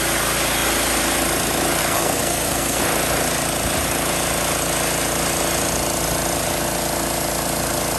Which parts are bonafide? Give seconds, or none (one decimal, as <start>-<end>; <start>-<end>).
0.0-1.8; 2.8-8.0